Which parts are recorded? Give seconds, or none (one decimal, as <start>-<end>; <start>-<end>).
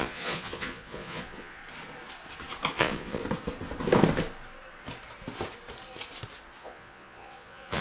1.6-2.7; 3.2-6.6